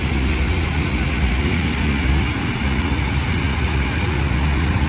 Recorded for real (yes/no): no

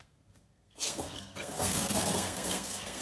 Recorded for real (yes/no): no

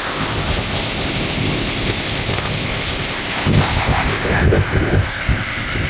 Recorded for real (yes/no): no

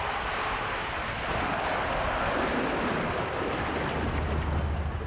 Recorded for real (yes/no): yes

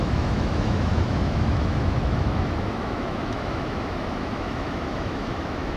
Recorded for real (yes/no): no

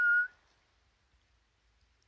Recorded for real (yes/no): yes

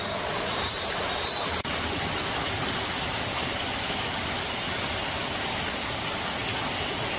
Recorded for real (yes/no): yes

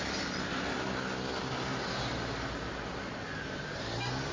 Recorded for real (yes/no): yes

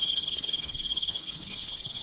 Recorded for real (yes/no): no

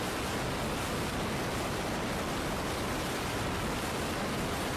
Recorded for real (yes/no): no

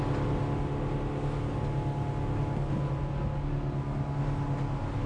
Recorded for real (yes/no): yes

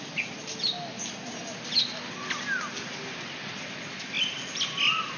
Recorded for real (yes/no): yes